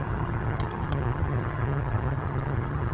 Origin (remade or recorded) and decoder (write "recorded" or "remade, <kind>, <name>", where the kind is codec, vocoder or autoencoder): remade, vocoder, HiFi-GAN